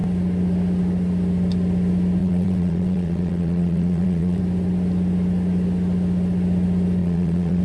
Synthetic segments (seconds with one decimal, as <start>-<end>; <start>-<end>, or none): 2.2-4.4; 7.0-7.6